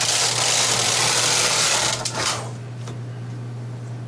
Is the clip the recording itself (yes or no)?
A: yes